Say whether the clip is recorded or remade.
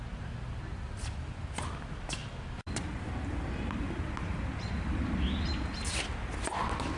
recorded